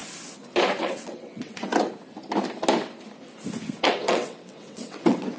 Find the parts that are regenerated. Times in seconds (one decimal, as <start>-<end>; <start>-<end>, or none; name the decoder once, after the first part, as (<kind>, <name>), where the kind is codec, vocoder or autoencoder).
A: 0.8-1.7 (vocoder, WaveNeXt); 3.8-5.4